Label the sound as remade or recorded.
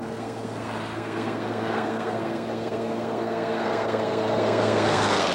remade